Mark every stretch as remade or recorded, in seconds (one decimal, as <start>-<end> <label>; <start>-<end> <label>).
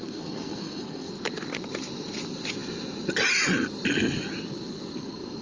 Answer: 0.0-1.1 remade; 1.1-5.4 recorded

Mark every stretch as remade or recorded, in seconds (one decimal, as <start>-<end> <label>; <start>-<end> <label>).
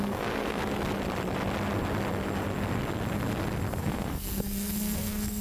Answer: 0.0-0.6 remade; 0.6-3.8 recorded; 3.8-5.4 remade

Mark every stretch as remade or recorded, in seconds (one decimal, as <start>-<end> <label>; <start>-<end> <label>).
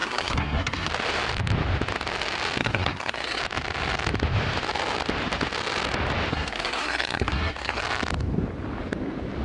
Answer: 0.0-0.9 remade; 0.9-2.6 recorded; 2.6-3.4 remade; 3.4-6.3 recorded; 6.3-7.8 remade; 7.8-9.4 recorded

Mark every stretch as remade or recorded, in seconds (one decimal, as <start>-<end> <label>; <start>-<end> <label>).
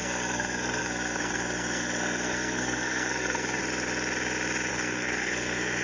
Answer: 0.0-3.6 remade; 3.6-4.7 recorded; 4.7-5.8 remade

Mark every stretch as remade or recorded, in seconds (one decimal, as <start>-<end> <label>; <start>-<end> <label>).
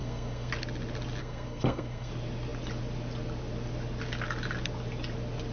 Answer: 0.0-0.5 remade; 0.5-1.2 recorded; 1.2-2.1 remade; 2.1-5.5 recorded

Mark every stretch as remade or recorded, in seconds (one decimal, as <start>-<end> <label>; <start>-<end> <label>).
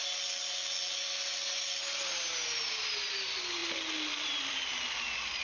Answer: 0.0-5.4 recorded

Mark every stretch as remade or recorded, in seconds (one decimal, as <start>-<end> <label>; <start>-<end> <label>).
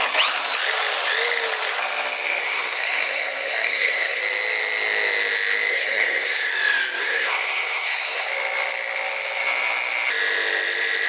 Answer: 0.0-2.4 recorded; 2.4-4.2 remade; 4.2-5.7 recorded; 5.7-6.5 remade; 6.5-7.0 recorded; 7.0-8.3 remade; 8.3-11.1 recorded